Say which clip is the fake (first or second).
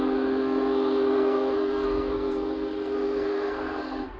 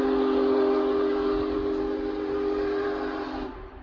first